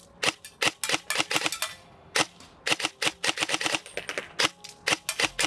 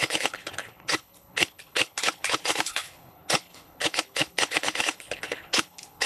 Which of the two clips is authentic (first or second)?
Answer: first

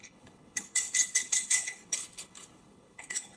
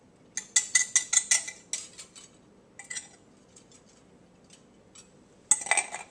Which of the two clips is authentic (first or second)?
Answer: second